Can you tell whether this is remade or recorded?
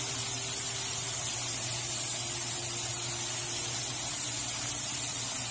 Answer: recorded